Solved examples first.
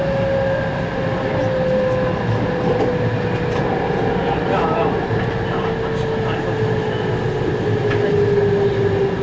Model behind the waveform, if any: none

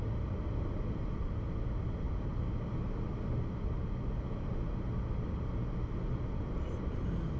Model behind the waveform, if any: none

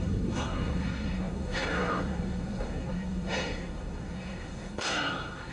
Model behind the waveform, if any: codec, SNAC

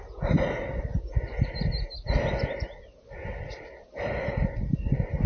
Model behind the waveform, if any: none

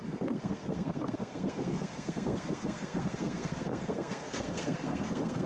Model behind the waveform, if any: codec, SNAC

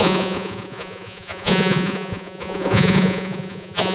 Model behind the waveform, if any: vocoder, Vocos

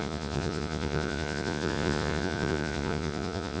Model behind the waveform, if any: vocoder, Vocos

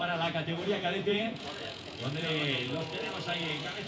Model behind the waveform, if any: vocoder, Vocos